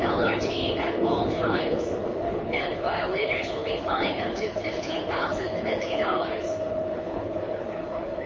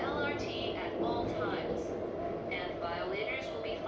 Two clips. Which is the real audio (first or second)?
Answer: second